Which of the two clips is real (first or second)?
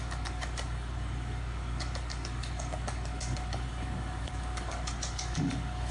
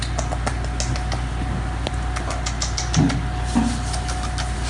second